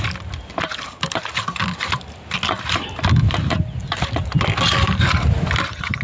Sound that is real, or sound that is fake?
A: real